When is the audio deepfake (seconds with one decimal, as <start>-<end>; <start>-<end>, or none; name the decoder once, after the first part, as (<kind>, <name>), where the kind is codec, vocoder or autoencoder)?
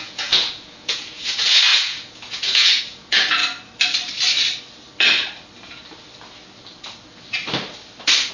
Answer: 0.0-3.4 (vocoder, Vocos)